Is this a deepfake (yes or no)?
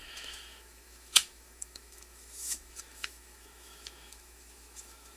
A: yes